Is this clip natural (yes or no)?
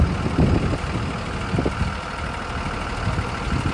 yes